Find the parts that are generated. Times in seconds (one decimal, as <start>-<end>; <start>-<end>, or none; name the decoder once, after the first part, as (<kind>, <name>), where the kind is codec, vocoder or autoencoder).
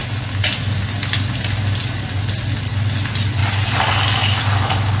none